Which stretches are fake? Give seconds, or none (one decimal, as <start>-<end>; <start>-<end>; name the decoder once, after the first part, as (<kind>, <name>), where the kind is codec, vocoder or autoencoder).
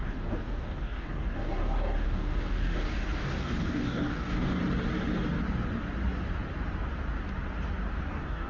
0.0-4.6 (codec, DAC); 8.1-8.5